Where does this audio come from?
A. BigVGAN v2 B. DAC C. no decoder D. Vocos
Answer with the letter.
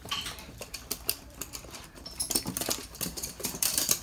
A